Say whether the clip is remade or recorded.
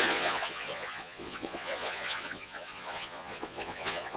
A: remade